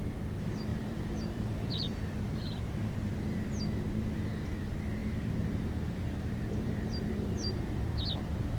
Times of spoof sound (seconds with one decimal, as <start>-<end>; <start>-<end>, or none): 0.7-2.6; 5.0-8.2